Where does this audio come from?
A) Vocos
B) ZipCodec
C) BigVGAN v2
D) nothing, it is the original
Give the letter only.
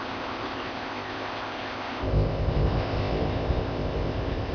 B